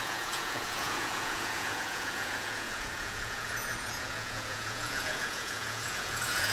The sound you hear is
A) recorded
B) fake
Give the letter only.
B